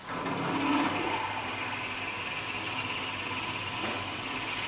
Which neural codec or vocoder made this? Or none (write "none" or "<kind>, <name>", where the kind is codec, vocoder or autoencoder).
none